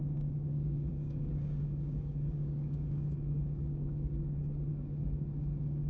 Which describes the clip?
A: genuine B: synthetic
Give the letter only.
B